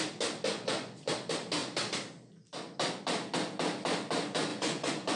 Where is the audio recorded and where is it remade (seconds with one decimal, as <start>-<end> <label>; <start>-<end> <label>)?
0.0-0.5 recorded; 0.5-1.1 remade; 1.1-4.5 recorded; 4.5-5.2 remade